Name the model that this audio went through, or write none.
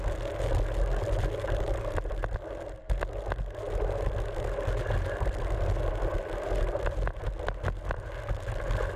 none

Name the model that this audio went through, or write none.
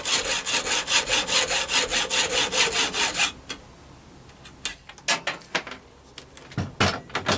none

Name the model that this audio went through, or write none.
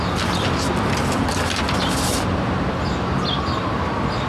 none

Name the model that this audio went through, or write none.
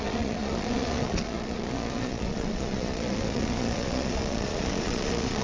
vocoder, Vocos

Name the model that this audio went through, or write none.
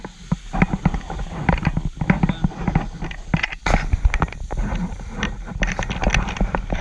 none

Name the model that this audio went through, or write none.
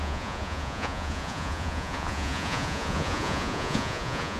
vocoder, Vocos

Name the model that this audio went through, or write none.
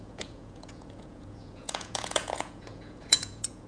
vocoder, Vocos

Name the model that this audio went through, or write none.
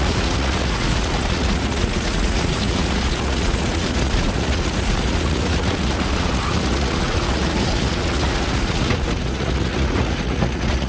vocoder, Vocos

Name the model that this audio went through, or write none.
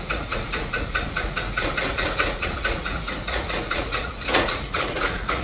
vocoder, Vocos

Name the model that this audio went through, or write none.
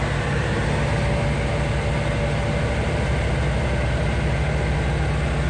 none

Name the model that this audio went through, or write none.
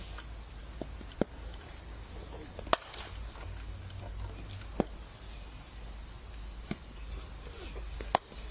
none